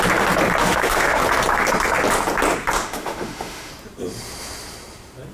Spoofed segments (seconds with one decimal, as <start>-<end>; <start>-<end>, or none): 0.6-1.2; 2.8-3.7